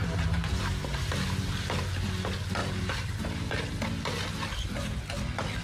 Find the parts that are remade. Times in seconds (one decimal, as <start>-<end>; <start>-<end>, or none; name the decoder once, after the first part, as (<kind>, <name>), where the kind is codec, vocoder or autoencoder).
0.0-1.5 (vocoder, BigVGAN v2); 2.6-3.5